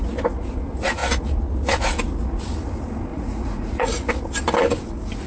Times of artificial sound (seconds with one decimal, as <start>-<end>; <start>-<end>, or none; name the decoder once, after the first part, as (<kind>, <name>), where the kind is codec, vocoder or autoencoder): 3.1-4.1 (vocoder, Vocos)